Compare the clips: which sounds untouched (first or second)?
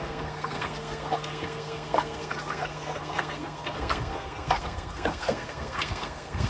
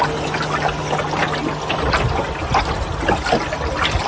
second